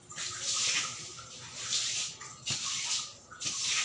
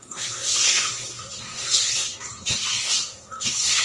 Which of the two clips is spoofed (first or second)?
second